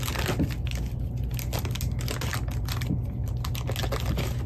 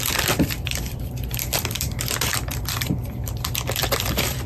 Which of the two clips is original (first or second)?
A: first